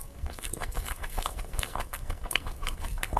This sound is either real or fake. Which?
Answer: fake